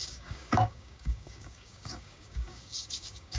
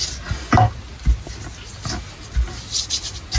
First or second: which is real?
second